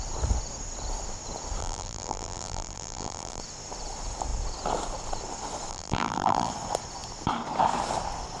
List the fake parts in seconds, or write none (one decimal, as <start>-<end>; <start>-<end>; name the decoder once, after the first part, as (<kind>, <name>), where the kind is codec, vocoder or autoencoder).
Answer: 1.6-3.4 (vocoder, BigVGAN v2); 5.7-6.5